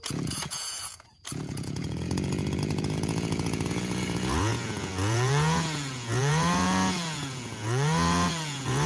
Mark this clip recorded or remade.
remade